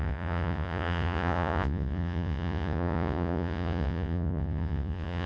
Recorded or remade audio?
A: remade